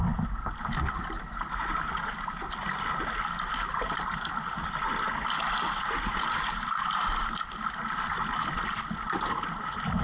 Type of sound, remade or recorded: recorded